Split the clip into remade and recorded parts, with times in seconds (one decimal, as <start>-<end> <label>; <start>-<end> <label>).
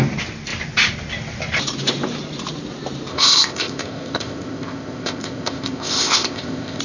0.0-3.1 recorded; 3.1-6.8 remade